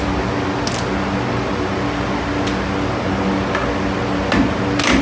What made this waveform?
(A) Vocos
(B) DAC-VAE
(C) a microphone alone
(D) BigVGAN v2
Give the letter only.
C